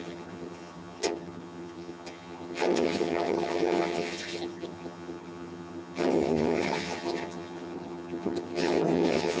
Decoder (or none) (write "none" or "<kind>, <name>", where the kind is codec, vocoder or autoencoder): vocoder, HiFi-GAN